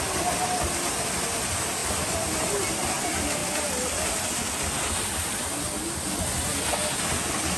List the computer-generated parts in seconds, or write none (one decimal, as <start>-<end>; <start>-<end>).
none